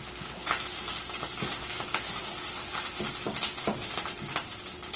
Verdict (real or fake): real